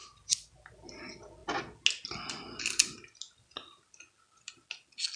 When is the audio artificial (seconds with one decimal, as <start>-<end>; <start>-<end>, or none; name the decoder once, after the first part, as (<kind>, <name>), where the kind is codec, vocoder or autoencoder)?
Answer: none